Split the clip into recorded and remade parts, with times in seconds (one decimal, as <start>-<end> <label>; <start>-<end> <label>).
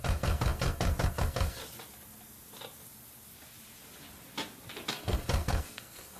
0.0-1.6 remade; 1.6-4.9 recorded; 4.9-6.2 remade